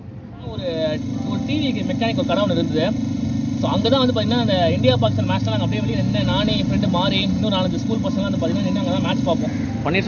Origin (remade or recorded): recorded